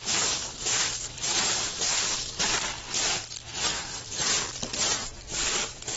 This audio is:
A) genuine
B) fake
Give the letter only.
B